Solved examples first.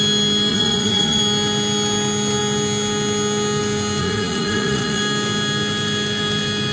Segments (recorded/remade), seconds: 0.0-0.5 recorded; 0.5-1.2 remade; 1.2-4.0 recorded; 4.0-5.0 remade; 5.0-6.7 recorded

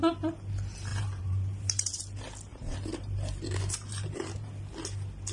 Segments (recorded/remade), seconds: 0.0-0.9 recorded; 0.9-2.0 remade; 2.0-2.5 recorded; 2.5-4.5 remade; 4.5-5.3 recorded

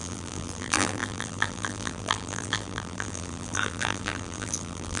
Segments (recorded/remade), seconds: 0.0-5.0 remade

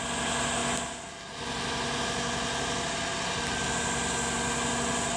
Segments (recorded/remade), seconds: 0.0-5.2 recorded

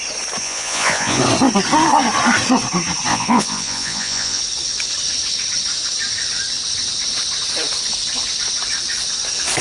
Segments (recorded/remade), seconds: 0.0-0.4 recorded; 0.4-1.2 remade; 1.2-3.1 recorded; 3.1-4.4 remade; 4.4-9.6 recorded